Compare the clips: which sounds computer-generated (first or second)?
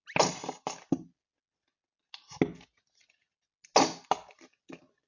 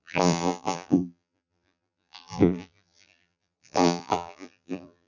second